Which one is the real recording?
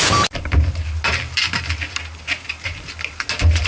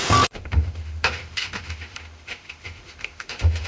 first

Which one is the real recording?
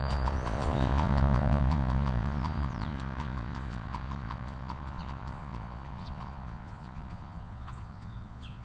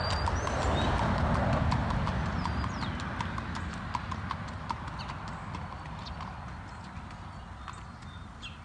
second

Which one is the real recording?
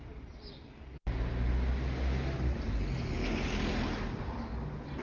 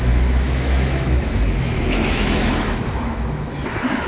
first